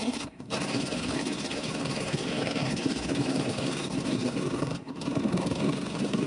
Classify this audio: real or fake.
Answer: fake